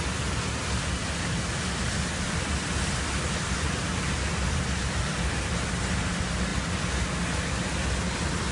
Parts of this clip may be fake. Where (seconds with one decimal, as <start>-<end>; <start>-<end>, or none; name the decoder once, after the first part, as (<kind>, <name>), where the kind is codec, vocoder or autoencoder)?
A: none